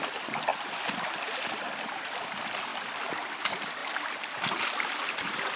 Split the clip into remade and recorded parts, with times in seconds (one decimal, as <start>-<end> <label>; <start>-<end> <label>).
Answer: 0.0-0.5 remade; 0.5-1.4 recorded; 1.4-2.7 remade; 2.7-3.3 recorded; 3.3-5.6 remade